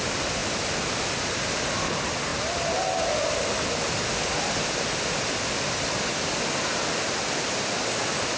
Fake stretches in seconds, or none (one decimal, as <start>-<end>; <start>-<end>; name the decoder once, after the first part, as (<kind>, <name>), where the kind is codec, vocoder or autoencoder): none